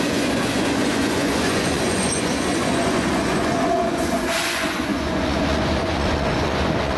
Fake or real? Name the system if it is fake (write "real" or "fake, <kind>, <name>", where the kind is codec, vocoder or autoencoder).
fake, vocoder, Vocos